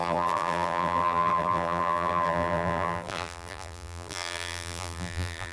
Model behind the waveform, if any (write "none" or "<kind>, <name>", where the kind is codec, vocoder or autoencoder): vocoder, BigVGAN v2